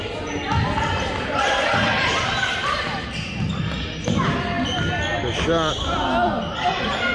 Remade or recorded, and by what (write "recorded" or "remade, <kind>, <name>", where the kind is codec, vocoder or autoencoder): recorded